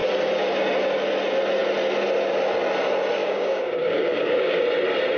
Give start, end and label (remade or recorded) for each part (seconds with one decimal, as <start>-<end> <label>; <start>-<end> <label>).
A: 0.0-3.2 recorded; 3.2-4.6 remade; 4.6-5.2 recorded